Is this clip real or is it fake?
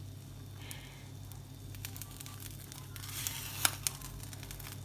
real